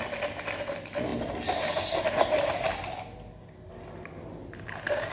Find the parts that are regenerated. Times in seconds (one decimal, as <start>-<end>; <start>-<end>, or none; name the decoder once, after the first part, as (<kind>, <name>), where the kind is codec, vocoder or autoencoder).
none